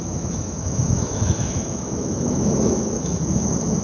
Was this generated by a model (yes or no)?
yes